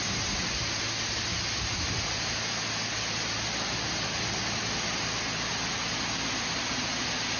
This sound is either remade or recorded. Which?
recorded